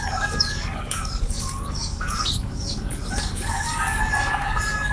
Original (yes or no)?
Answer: no